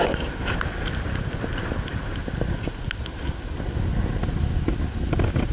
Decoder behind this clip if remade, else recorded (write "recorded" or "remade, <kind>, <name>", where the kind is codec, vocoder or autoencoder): recorded